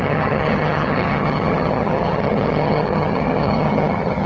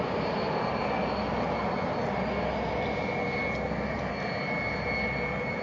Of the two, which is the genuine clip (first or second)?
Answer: second